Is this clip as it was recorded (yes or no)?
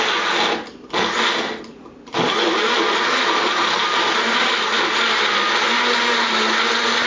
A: yes